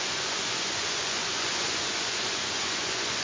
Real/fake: fake